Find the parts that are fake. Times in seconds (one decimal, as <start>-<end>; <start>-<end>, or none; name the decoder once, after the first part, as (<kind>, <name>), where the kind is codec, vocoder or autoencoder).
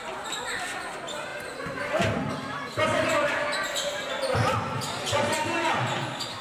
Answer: none